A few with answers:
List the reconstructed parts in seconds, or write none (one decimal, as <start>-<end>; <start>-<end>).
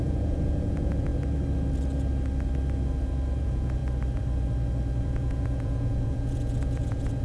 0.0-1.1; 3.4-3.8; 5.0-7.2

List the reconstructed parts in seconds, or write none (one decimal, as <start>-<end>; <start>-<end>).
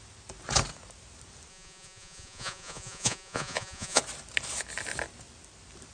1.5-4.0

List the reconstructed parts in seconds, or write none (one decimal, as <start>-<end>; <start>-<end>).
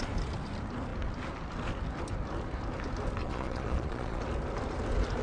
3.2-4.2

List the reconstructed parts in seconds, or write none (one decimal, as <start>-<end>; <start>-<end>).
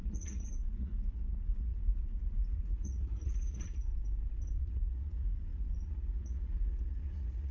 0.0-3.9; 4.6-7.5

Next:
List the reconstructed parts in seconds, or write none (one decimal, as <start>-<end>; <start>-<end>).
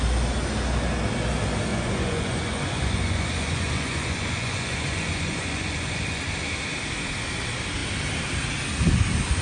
1.7-6.2